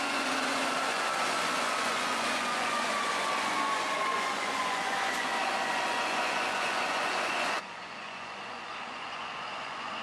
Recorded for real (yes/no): no